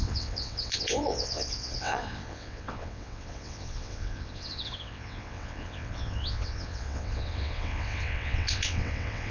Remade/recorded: remade